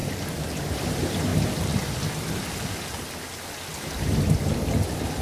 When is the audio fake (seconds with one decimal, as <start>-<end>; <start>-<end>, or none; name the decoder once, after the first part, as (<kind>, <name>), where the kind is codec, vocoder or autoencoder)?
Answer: 1.3-2.9 (vocoder, BigVGAN v2)